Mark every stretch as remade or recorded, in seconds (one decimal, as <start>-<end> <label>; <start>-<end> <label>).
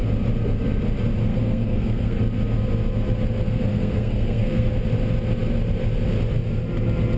0.0-1.3 recorded; 1.3-2.2 remade; 2.2-3.7 recorded; 3.7-4.7 remade; 4.7-7.2 recorded